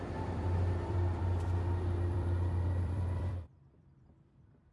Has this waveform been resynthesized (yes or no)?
yes